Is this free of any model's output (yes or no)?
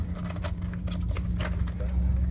yes